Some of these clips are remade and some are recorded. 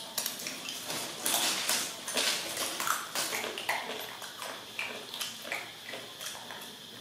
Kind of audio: recorded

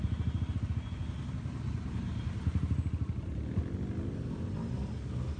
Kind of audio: recorded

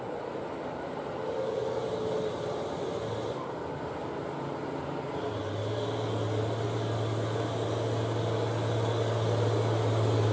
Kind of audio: recorded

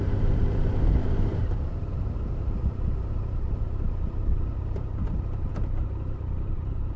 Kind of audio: remade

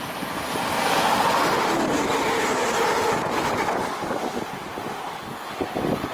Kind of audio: recorded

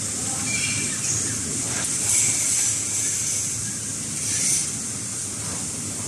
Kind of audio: remade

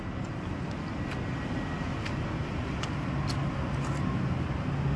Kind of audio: recorded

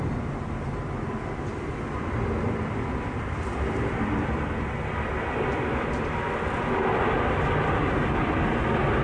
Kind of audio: recorded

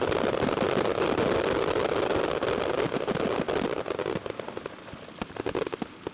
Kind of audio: remade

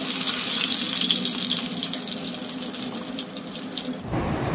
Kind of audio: recorded